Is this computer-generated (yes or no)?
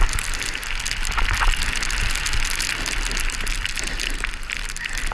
no